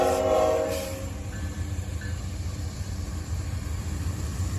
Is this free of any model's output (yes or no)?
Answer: no